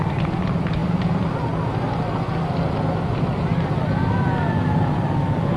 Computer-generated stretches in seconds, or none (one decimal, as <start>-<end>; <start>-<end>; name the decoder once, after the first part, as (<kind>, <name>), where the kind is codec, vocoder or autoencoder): none